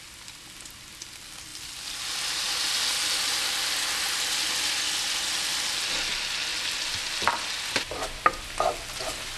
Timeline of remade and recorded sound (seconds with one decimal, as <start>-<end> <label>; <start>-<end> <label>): 0.0-9.4 recorded